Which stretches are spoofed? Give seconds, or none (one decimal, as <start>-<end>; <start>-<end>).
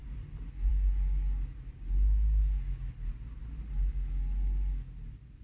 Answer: none